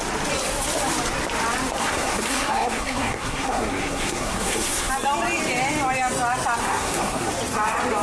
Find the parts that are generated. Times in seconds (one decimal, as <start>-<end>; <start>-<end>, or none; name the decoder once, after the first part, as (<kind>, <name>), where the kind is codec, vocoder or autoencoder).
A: 1.8-4.9 (codec, SNAC); 6.6-7.3